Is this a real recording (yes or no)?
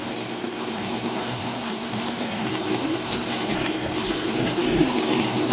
no